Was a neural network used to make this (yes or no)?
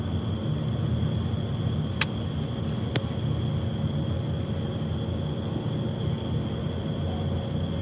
no